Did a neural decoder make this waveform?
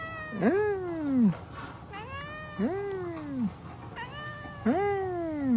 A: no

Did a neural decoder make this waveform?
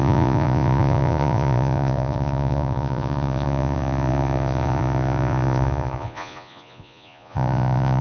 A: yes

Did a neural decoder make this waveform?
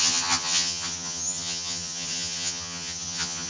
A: yes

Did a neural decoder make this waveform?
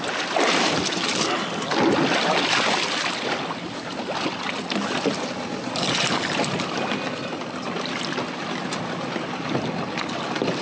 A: no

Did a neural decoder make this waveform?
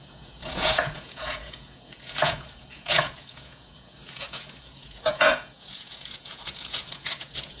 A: yes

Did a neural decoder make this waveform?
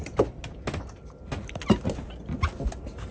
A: no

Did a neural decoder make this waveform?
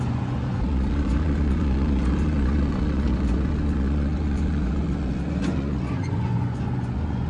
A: yes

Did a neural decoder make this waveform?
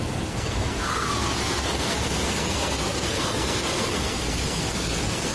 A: yes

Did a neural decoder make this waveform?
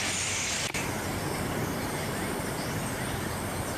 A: yes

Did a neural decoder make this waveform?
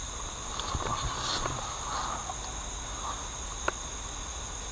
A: no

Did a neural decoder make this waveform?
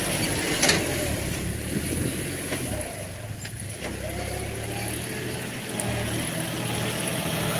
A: no